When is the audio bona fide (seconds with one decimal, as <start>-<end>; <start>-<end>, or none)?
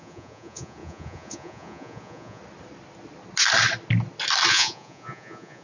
2.4-4.5